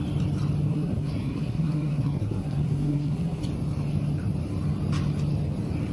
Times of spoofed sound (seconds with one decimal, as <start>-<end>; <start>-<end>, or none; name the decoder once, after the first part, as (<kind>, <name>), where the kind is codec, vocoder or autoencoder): 0.7-3.4 (codec, SNAC)